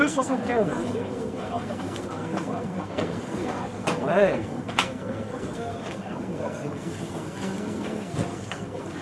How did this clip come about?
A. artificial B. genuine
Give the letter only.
A